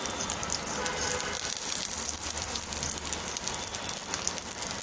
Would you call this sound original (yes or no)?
yes